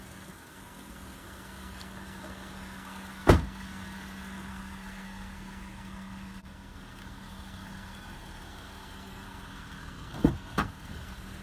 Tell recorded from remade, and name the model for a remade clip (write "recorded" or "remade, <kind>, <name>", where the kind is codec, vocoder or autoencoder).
remade, codec, SNAC